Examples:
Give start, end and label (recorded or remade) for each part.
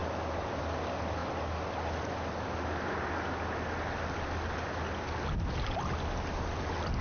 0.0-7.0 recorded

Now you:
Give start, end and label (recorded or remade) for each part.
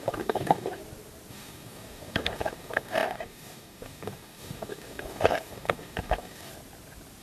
0.0-0.8 remade; 0.8-1.3 recorded; 1.3-6.5 remade; 6.5-7.2 recorded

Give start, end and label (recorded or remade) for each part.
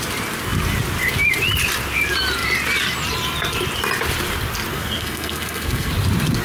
0.0-4.7 recorded; 4.7-5.9 remade; 5.9-6.4 recorded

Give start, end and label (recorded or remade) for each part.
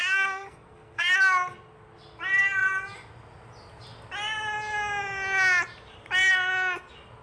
0.0-1.1 remade; 1.1-7.2 recorded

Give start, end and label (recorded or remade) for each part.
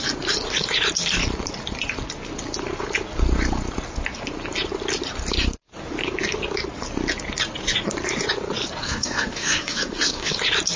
0.0-8.8 recorded; 8.8-10.3 remade; 10.3-10.8 recorded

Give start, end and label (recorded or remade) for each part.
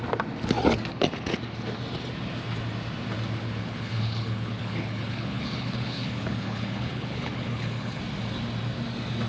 0.0-3.6 recorded; 3.6-8.0 remade; 8.0-9.3 recorded